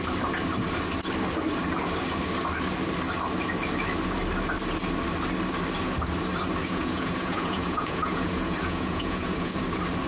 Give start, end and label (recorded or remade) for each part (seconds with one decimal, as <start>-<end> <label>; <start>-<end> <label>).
0.0-6.6 recorded; 6.6-9.5 remade; 9.5-10.1 recorded